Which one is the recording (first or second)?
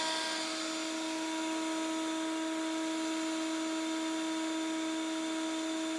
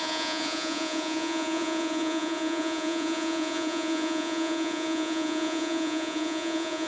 first